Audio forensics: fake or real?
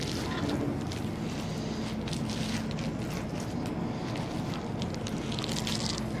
real